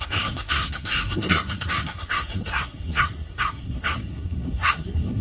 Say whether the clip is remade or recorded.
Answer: remade